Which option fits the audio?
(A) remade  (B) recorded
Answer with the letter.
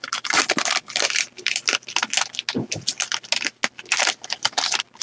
B